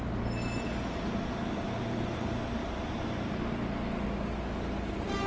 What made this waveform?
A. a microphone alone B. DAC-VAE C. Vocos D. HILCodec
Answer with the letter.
A